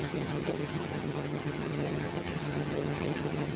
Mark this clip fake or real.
fake